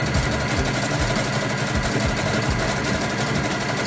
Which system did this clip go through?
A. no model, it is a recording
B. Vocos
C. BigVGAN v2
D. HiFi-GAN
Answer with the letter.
A